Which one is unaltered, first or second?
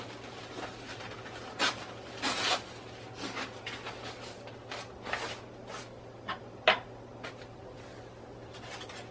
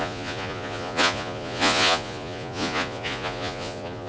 first